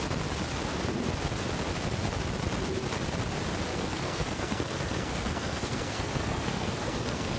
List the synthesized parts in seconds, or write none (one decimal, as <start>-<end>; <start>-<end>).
3.7-7.4